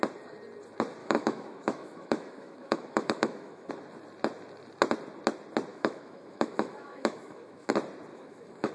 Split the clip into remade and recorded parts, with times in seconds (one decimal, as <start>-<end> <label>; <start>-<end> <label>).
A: 0.0-1.0 recorded; 1.0-3.7 remade; 3.7-5.7 recorded; 5.7-7.7 remade; 7.7-8.1 recorded; 8.1-8.7 remade